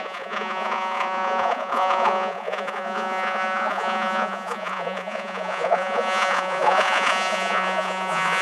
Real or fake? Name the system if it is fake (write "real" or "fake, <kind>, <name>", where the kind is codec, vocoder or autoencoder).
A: fake, vocoder, Vocos